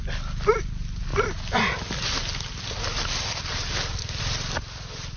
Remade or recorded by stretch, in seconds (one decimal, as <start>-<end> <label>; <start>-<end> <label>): 0.0-5.2 recorded